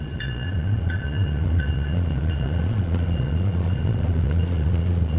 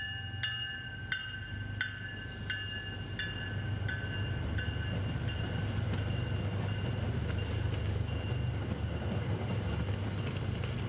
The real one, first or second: second